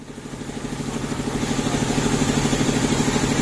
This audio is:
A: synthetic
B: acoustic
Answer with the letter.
B